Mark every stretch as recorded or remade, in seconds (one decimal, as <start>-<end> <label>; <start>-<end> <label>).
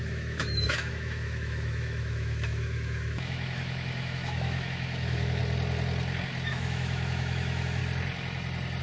0.0-5.4 remade; 5.4-6.5 recorded; 6.5-7.8 remade; 7.8-8.8 recorded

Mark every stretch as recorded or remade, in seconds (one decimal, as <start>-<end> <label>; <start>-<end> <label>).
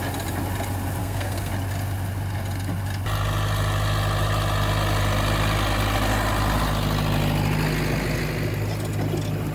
0.0-1.0 recorded; 1.0-1.5 remade; 1.5-9.5 recorded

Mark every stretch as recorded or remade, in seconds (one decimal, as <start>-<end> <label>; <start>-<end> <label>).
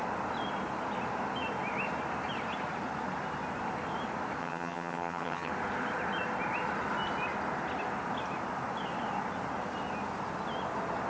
0.0-4.4 recorded; 4.4-5.5 remade; 5.5-11.1 recorded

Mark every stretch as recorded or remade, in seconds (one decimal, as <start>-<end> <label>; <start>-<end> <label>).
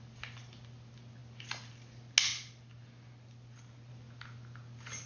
0.0-5.1 recorded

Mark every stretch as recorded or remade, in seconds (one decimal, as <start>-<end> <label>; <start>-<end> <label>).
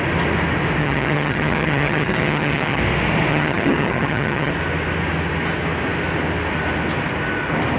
0.0-0.8 recorded; 0.8-2.8 remade; 2.8-3.3 recorded; 3.3-4.5 remade; 4.5-7.8 recorded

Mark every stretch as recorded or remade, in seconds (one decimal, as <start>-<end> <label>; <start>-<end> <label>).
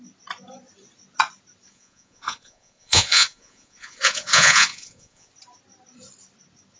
0.0-1.7 recorded; 1.7-5.3 remade; 5.3-6.8 recorded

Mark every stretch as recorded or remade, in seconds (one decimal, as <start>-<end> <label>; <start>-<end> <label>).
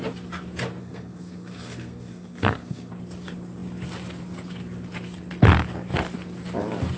0.0-0.8 recorded; 0.8-2.9 remade; 2.9-7.0 recorded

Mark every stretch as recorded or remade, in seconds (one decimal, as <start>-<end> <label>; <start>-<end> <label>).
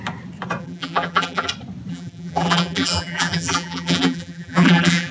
0.0-0.6 recorded; 0.6-1.5 remade; 1.5-1.9 recorded; 1.9-5.1 remade